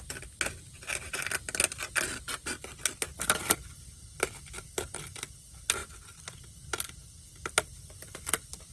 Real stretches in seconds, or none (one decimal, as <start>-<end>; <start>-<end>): 0.0-8.7